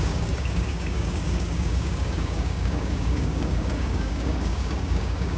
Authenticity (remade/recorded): remade